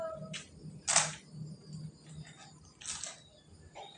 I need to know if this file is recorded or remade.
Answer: recorded